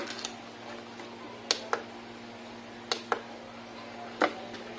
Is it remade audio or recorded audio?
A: recorded